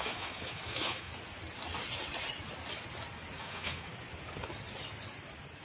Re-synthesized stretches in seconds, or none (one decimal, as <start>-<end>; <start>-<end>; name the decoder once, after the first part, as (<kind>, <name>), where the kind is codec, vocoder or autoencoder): 0.0-1.1 (autoencoder, DAC-VAE); 3.4-3.9